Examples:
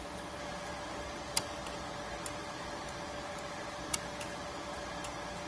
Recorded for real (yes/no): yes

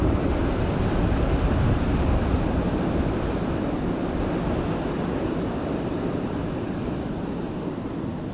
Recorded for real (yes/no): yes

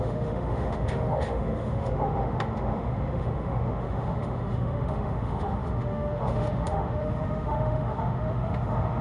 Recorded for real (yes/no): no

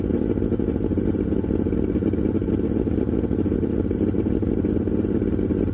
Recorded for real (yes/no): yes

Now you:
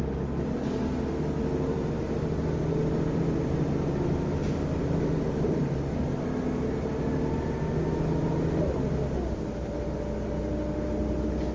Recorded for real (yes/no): yes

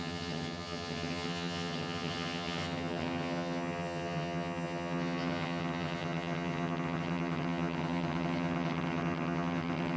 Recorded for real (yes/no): no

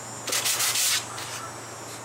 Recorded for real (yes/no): yes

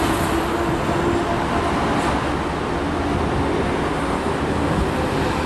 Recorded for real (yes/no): yes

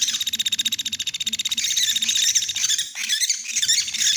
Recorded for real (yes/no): yes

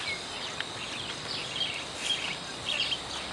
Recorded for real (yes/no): yes